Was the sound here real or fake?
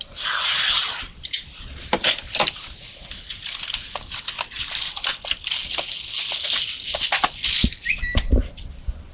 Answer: real